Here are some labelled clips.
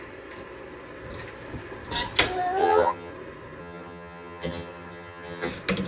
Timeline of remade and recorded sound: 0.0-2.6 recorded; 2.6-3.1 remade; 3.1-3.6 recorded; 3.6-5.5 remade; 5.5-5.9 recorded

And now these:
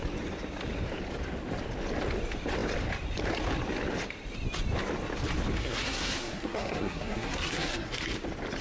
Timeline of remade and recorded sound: 0.0-5.6 recorded; 5.6-8.0 remade; 8.0-8.6 recorded

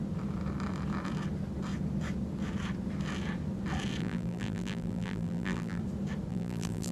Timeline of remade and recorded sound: 0.0-4.0 recorded; 4.0-5.8 remade; 5.8-6.3 recorded; 6.3-6.9 remade